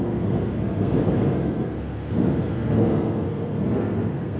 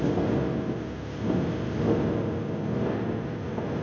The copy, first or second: first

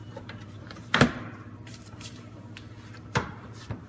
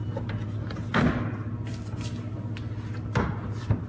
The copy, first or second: first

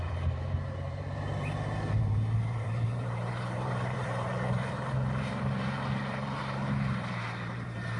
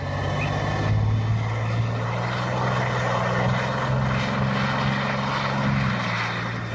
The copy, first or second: first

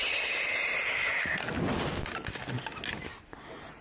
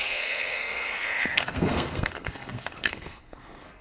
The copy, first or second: second